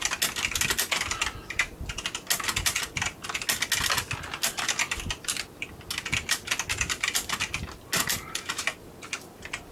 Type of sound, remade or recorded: recorded